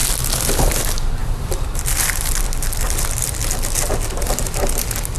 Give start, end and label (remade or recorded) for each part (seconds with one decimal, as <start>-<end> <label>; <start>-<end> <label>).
0.0-1.2 recorded; 1.2-2.9 remade; 2.9-5.2 recorded